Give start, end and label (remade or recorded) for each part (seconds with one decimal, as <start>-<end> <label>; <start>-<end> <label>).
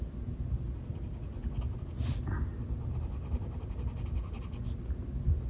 0.0-5.5 recorded